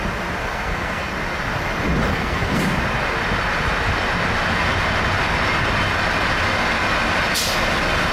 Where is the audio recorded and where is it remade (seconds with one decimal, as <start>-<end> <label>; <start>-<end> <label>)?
0.0-0.4 recorded; 0.4-1.1 remade; 1.1-2.1 recorded; 2.1-2.6 remade; 2.6-8.1 recorded

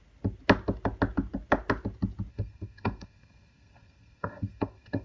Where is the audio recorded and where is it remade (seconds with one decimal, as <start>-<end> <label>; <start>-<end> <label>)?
0.0-2.3 recorded; 2.3-5.0 remade